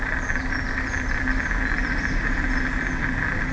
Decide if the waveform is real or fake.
real